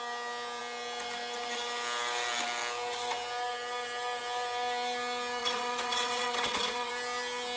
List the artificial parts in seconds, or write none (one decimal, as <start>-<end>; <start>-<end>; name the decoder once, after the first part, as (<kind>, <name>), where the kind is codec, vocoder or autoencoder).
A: 5.4-6.9 (vocoder, WaveNeXt)